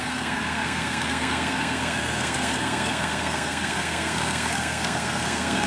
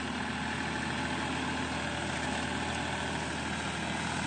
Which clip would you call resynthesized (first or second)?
first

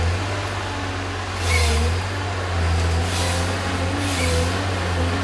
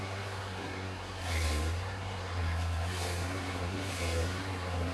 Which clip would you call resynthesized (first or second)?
second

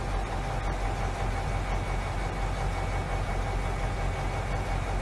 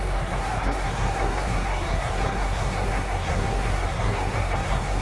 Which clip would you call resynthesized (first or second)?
second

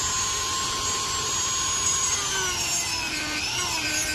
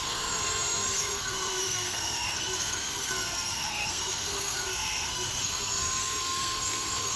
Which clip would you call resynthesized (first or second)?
second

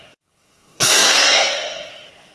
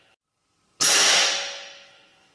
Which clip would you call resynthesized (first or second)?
first